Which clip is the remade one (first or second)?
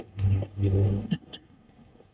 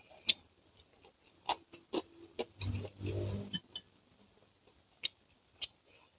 first